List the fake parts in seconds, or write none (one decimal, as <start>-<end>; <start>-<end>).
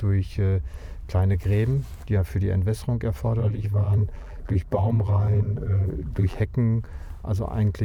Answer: 3.4-6.4